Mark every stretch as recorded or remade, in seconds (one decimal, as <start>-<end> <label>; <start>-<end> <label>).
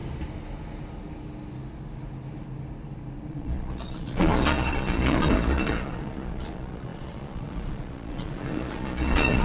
0.0-3.3 recorded; 3.3-9.4 remade